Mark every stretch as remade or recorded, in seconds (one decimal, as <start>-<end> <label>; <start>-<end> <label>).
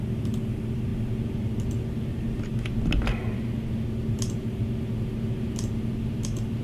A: 0.0-6.6 recorded